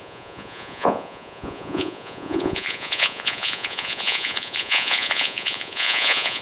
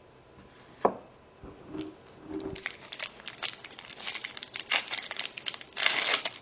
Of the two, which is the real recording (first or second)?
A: second